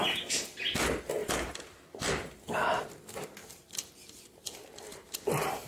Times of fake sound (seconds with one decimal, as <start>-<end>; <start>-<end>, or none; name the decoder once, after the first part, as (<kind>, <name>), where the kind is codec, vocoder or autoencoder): 1.2-2.8 (vocoder, BigVGAN v2); 3.4-3.9; 4.4-5.7